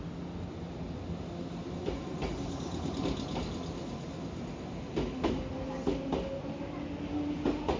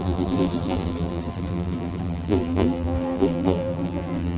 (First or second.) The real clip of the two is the first